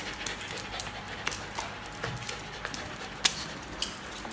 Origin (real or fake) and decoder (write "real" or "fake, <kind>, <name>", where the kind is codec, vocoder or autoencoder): real